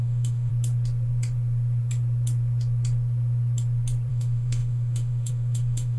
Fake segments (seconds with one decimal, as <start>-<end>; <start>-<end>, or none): 0.0-0.5; 4.1-6.0